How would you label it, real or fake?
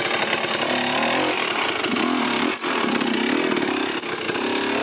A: real